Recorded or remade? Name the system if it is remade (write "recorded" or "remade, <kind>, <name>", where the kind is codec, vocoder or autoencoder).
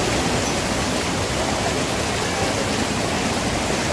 recorded